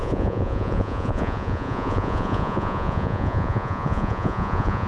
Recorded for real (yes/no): no